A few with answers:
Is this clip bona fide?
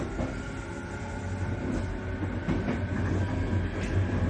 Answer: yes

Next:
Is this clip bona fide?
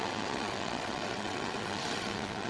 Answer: no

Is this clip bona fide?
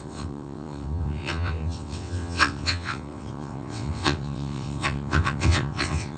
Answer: no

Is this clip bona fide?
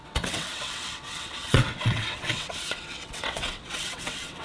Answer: no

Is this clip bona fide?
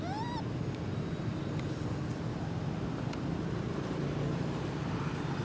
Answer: yes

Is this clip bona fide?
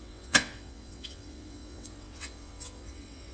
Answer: no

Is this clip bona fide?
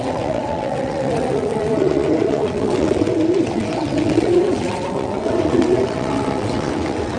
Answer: no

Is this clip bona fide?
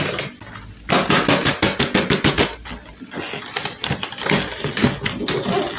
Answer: yes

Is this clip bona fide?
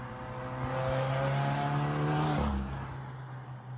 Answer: yes